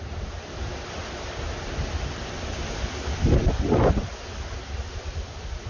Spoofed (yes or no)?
no